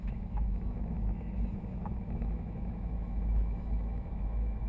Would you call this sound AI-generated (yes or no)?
yes